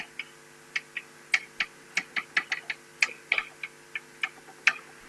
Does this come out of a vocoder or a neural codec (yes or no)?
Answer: no